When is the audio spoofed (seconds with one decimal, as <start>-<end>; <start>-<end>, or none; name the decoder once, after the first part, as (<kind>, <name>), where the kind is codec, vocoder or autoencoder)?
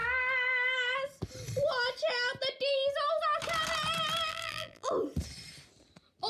4.3-4.9 (vocoder, BigVGAN v2)